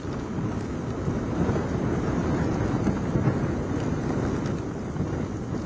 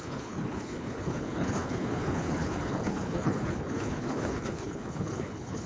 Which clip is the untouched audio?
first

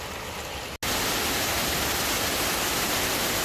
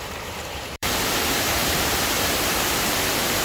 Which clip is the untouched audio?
first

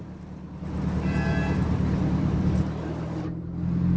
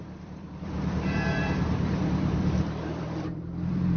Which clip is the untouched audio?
first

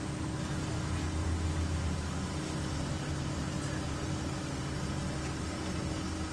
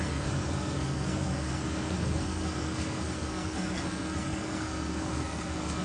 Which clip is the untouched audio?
first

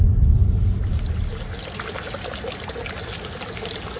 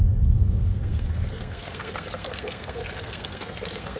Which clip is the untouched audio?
first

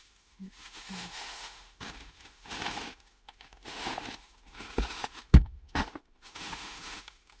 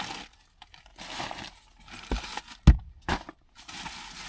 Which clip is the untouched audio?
second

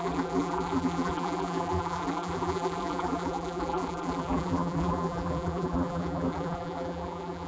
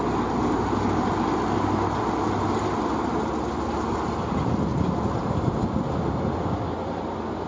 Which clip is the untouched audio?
second